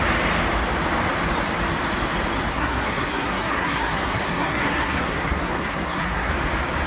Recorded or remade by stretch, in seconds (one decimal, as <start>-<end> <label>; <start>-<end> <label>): 0.0-2.5 recorded; 2.5-6.3 remade; 6.3-6.9 recorded